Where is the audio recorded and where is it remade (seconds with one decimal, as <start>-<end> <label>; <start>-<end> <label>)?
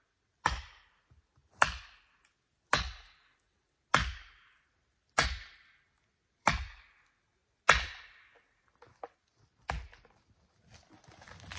0.0-11.6 recorded